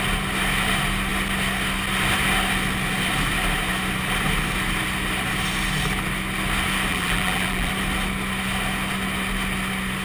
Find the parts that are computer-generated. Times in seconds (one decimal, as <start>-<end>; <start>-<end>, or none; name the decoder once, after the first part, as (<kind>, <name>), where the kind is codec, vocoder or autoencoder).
6.9-7.7 (vocoder, BigVGAN v2)